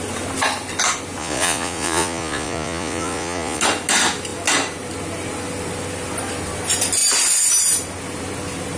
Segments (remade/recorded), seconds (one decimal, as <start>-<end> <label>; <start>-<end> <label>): 0.0-1.2 recorded; 1.2-3.6 remade; 3.6-8.8 recorded